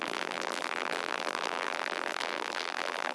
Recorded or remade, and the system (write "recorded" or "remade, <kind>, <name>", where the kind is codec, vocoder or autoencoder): remade, vocoder, BigVGAN v2